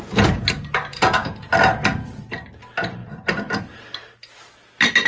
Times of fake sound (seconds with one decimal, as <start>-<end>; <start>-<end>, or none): 0.9-1.5